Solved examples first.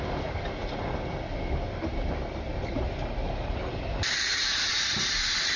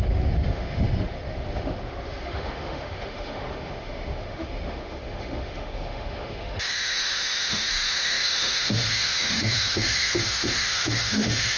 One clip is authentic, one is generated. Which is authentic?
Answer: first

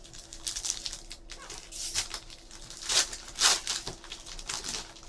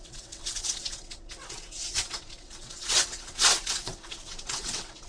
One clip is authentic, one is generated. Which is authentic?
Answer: first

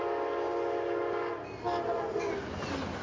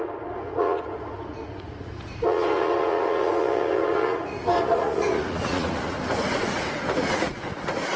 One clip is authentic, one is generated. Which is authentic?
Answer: first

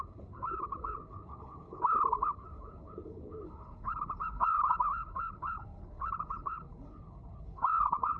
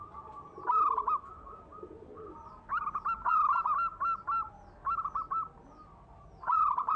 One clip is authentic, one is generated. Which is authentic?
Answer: second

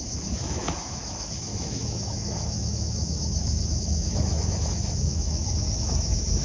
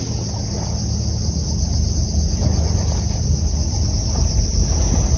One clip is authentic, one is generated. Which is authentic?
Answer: second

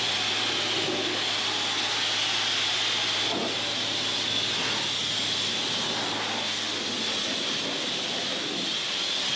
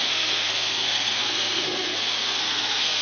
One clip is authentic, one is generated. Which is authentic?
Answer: first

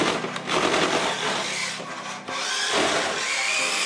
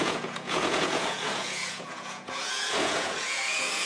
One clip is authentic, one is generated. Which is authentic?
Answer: first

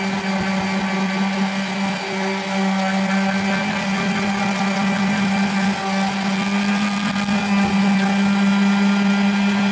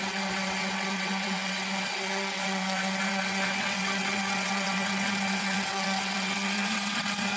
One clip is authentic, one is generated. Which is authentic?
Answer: first